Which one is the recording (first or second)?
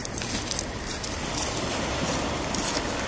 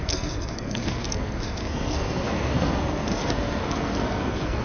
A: first